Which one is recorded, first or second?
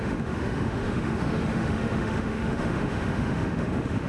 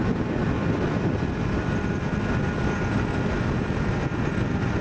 second